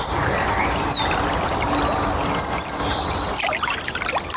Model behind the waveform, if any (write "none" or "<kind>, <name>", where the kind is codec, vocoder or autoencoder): none